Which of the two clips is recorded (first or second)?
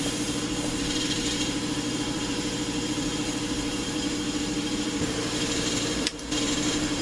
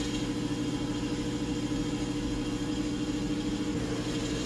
second